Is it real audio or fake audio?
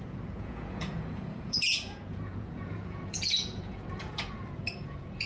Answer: fake